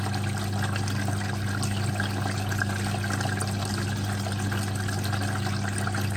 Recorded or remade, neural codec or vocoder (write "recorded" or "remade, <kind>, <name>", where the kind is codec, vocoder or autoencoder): recorded